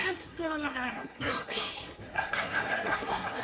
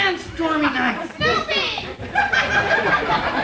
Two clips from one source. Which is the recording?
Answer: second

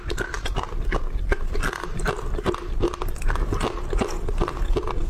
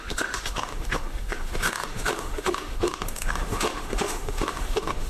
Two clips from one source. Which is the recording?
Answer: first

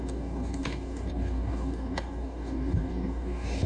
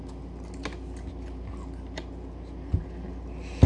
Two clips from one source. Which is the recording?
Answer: second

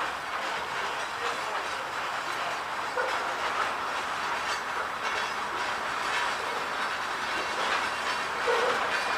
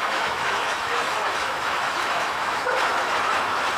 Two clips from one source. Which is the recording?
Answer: first